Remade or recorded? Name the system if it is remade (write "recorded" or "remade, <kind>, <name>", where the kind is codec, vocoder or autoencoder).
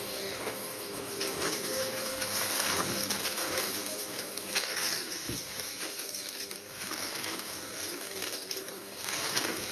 remade, codec, DAC